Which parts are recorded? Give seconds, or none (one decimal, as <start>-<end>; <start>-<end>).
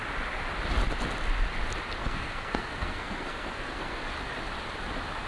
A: 0.0-2.0; 4.0-5.3